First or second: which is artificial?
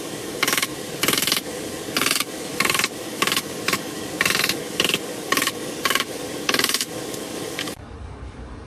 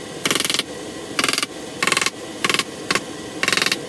first